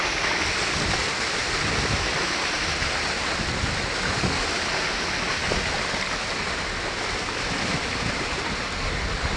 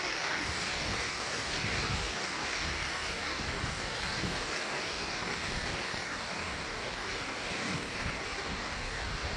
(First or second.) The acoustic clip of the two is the first